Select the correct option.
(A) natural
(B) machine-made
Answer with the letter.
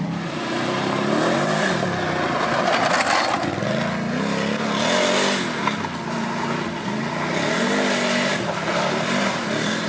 A